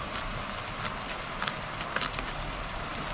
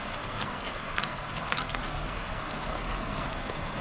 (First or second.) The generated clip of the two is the second